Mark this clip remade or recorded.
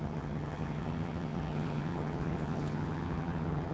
remade